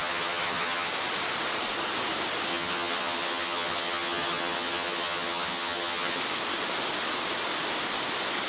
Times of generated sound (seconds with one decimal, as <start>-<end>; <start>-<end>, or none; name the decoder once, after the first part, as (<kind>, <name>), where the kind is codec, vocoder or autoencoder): 0.0-0.9 (vocoder, HiFi-GAN); 2.5-6.2